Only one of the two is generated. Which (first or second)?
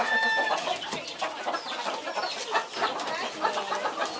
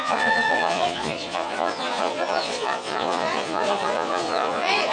second